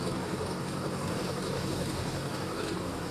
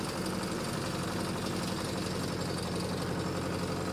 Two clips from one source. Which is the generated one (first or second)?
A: first